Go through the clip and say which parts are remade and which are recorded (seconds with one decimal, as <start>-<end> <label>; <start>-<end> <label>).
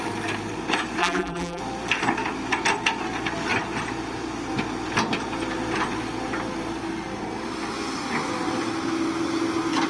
0.0-1.0 recorded; 1.0-1.6 remade; 1.6-9.9 recorded